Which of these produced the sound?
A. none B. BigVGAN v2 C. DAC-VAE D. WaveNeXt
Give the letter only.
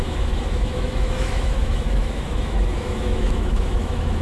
C